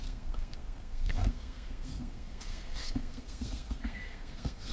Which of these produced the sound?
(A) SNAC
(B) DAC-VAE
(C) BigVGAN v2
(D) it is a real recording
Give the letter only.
A